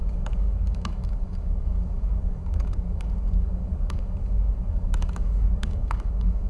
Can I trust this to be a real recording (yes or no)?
no